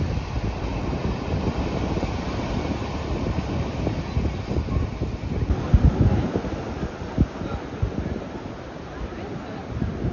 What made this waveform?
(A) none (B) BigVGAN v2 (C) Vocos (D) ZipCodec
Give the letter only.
A